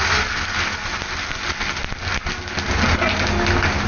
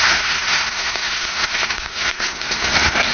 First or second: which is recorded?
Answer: first